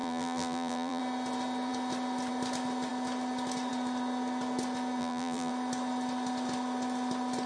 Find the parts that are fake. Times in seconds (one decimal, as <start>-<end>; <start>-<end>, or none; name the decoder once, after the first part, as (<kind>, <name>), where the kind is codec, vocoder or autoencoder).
0.0-1.0 (vocoder, BigVGAN v2); 5.0-5.5